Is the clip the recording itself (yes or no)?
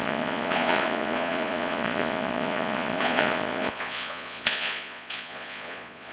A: no